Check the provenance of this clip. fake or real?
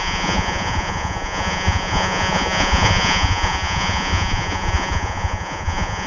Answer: fake